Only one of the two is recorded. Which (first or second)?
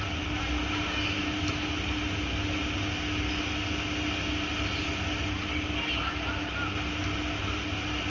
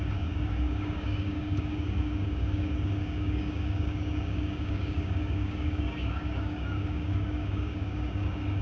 first